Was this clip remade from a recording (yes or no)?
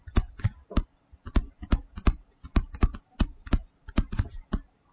no